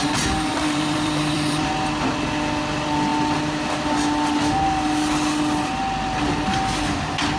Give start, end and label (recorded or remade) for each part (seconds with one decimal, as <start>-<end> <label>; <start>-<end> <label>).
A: 0.0-0.5 recorded; 0.5-1.7 remade; 1.7-7.4 recorded